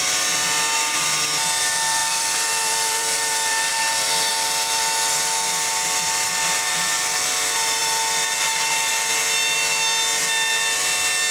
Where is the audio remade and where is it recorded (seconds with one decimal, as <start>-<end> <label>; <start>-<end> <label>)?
0.0-2.0 recorded; 2.0-3.8 remade; 3.8-11.3 recorded